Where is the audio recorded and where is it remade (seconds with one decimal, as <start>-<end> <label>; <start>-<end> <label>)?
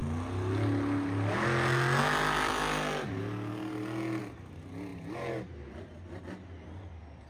0.0-7.3 recorded